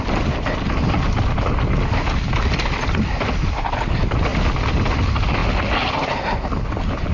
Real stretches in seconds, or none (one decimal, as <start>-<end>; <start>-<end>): 0.0-7.1